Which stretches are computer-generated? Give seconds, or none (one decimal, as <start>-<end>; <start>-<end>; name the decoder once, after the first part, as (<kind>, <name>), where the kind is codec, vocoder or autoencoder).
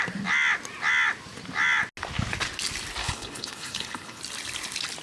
3.0-4.2 (codec, HILCodec)